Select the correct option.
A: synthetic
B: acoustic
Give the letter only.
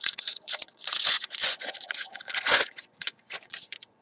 A